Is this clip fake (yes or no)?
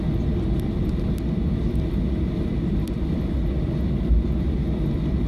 no